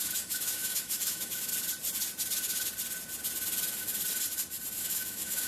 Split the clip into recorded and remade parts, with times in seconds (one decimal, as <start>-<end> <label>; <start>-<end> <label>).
0.0-1.5 remade; 1.5-4.8 recorded; 4.8-5.5 remade